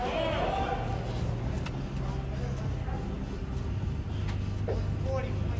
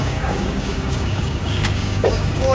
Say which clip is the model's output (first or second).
second